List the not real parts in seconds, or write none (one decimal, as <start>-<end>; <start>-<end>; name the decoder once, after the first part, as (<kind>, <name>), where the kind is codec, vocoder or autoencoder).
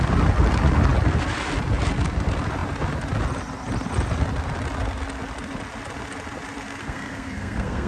6.8-7.9 (codec, SNAC)